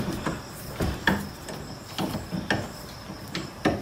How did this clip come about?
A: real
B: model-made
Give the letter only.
A